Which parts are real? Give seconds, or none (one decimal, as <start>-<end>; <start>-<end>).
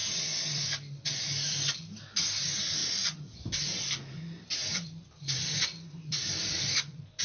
1.1-2.8